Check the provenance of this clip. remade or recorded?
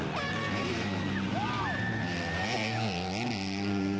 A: recorded